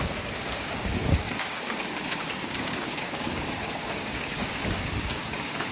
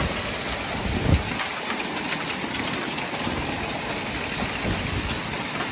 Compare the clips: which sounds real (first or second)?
second